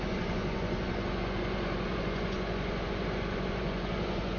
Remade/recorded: remade